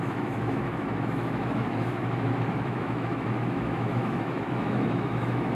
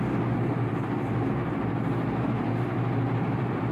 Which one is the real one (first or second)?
second